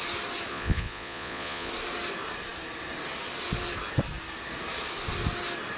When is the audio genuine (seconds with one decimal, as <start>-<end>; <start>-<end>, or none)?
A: 0.0-0.5; 1.7-5.8